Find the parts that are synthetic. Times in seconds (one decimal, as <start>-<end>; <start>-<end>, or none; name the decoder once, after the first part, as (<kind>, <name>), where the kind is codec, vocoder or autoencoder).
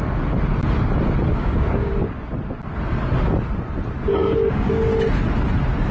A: 1.3-1.9 (codec, DAC); 4.2-4.8